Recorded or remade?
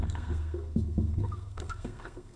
remade